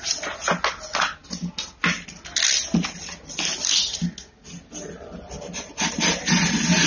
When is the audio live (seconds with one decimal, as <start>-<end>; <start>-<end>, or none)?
0.0-6.9